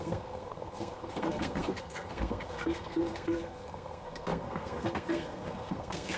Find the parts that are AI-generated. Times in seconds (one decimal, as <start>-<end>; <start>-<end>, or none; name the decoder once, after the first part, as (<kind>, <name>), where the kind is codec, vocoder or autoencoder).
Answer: 0.0-6.2 (codec, SNAC)